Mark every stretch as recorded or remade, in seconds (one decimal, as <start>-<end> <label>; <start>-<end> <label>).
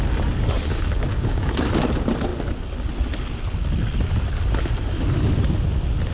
0.0-0.7 recorded; 0.7-1.5 remade; 1.5-6.1 recorded